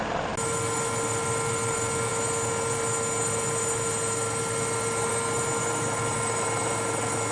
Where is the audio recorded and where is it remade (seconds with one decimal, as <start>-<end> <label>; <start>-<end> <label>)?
0.0-7.3 recorded